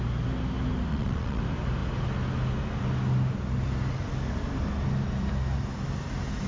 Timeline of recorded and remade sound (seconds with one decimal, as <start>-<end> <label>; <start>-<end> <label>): 0.0-0.9 recorded; 0.9-1.4 remade; 1.4-6.5 recorded